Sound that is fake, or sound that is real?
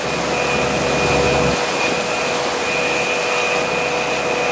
real